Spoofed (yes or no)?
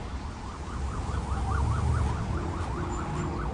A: no